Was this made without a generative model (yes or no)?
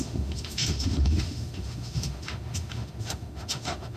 no